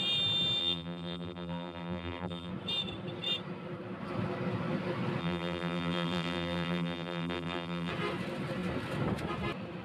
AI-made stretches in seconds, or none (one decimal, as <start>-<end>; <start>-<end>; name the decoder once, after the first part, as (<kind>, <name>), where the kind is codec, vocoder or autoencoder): 0.6-2.5 (vocoder, BigVGAN v2); 5.2-7.9